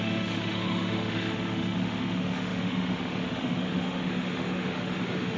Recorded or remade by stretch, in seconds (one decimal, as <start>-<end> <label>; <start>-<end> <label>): 0.0-5.4 remade